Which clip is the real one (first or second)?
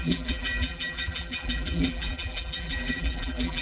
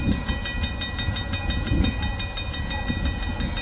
second